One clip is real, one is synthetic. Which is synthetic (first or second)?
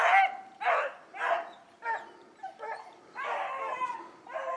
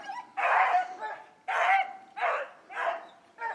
second